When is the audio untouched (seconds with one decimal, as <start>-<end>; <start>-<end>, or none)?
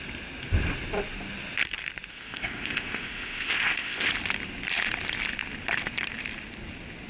0.0-2.1; 4.1-7.1